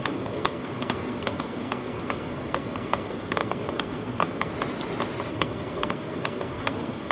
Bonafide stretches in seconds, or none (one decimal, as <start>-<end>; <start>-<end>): 4.5-5.3

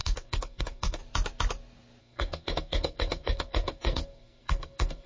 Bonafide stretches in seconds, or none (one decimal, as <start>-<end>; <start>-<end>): 1.0-2.0